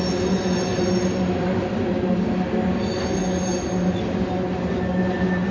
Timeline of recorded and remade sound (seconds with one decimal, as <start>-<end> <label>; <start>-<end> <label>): 0.0-0.7 recorded; 0.7-2.1 remade; 2.1-5.5 recorded